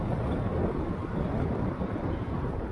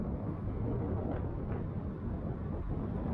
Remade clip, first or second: first